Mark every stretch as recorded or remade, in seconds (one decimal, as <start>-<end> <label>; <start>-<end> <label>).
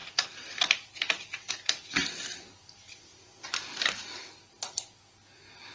0.0-5.7 remade